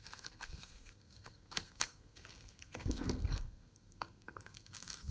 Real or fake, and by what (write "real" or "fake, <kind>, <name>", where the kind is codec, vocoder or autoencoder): fake, codec, SNAC